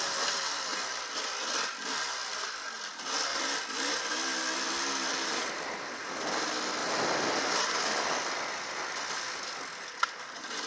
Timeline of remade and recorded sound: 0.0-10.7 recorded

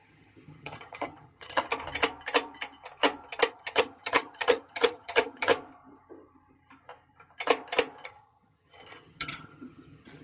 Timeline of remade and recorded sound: 0.0-1.7 remade; 1.7-3.5 recorded; 3.5-5.5 remade; 5.5-8.1 recorded; 8.1-10.2 remade

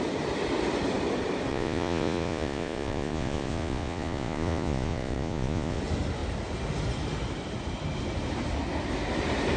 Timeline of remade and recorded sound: 0.0-1.5 recorded; 1.5-5.8 remade; 5.8-9.6 recorded